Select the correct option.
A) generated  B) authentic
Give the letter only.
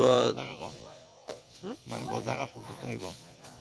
A